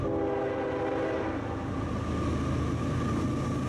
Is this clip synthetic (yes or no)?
no